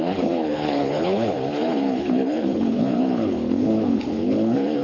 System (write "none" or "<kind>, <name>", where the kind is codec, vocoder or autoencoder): codec, HILCodec